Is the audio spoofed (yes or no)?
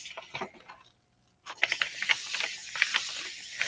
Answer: no